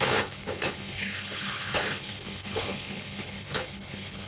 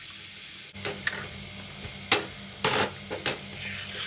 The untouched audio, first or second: second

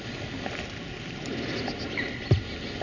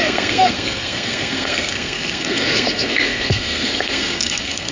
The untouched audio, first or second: first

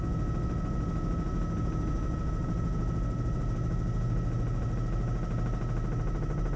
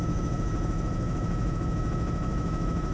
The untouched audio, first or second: first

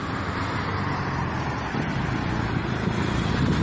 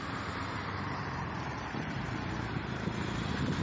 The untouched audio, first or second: first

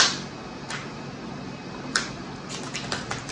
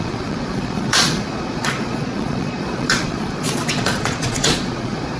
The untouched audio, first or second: first